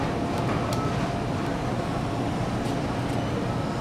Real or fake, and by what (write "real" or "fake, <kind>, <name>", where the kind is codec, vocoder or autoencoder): real